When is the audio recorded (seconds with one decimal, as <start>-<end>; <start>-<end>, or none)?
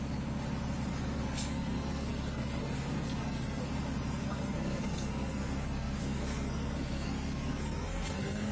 0.0-0.9; 3.6-4.3